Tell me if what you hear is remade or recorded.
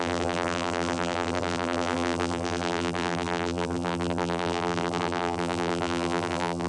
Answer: remade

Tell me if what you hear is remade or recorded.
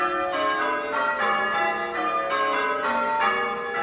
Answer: recorded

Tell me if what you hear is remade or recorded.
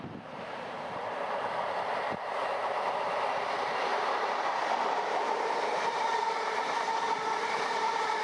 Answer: remade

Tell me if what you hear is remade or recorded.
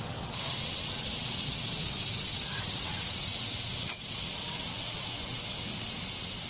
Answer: remade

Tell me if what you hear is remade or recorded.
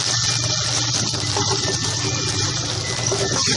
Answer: recorded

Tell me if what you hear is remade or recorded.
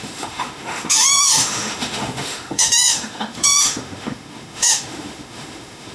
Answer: remade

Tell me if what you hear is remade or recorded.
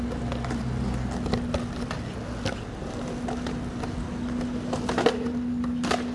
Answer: recorded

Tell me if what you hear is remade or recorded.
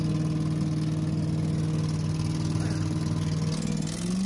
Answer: recorded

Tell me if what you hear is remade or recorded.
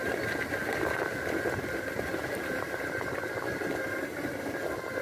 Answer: recorded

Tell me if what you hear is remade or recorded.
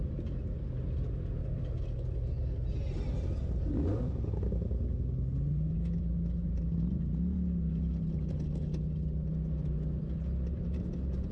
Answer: recorded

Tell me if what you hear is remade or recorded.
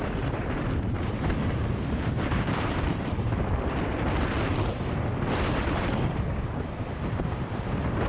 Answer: remade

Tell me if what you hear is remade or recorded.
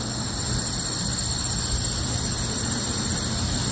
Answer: recorded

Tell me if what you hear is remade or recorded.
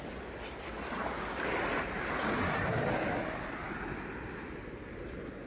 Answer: recorded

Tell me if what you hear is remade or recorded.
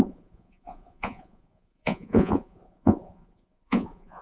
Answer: remade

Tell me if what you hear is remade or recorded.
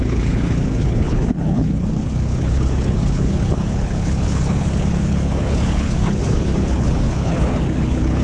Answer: remade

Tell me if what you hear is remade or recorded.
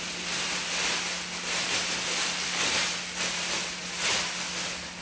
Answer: recorded